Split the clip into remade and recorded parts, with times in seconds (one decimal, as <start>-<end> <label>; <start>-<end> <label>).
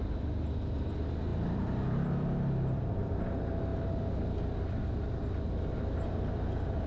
0.0-1.3 recorded; 1.3-3.2 remade; 3.2-6.9 recorded